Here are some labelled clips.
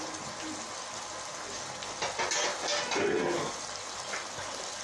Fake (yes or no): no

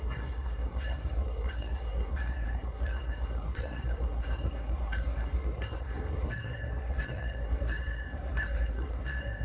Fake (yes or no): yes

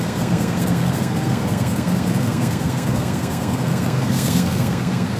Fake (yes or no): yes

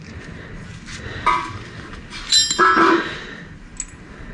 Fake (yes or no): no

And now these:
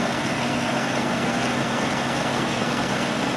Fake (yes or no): yes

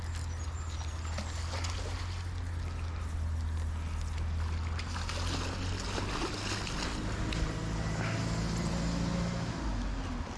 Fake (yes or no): no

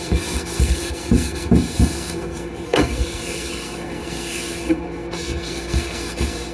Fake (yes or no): yes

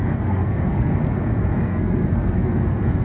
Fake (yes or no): yes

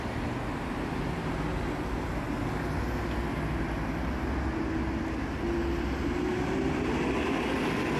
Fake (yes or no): no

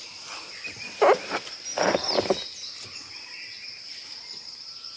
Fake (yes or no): no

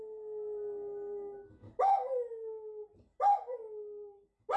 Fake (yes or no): no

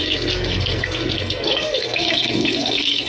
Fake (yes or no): yes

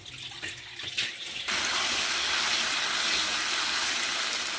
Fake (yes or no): no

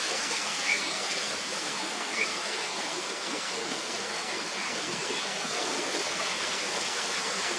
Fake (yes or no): yes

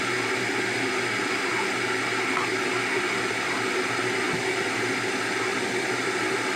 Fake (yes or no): no